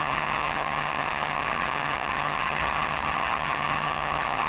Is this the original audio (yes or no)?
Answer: no